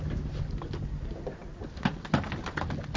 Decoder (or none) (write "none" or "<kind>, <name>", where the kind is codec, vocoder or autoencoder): none